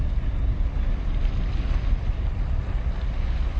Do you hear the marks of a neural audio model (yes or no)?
no